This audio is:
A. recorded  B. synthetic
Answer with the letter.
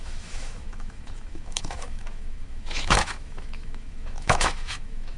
B